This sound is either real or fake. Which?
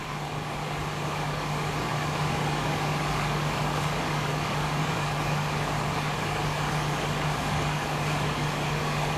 fake